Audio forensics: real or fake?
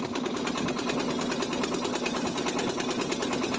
real